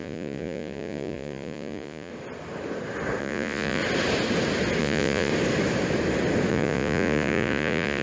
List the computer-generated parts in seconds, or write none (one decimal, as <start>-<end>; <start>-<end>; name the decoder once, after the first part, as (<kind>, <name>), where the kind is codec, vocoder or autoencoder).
0.0-2.1 (vocoder, Vocos); 3.2-3.8; 4.8-5.3; 6.5-8.0